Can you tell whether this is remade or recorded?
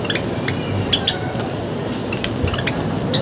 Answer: recorded